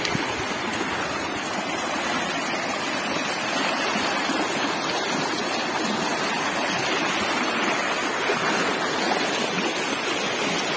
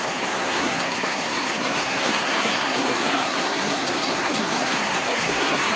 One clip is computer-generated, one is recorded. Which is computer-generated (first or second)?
second